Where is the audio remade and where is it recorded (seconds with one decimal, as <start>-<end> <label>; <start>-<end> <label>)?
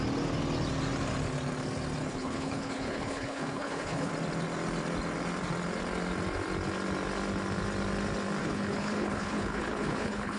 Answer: 0.0-2.0 recorded; 2.0-4.1 remade; 4.1-8.4 recorded; 8.4-10.4 remade